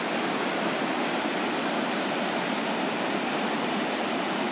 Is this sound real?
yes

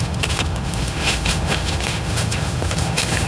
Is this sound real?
no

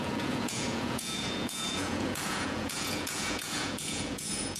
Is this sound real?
no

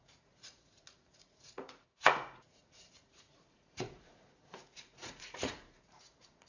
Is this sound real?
no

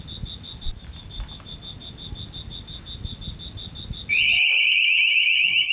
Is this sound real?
yes